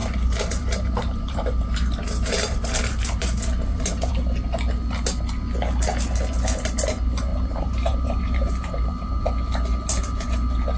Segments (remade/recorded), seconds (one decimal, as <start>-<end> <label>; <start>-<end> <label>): 0.0-4.1 remade; 4.1-7.3 recorded; 7.3-9.2 remade; 9.2-10.8 recorded